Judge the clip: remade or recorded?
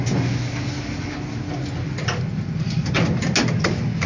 recorded